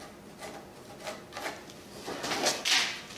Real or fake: real